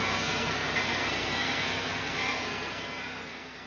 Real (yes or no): no